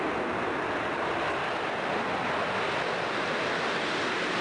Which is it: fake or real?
real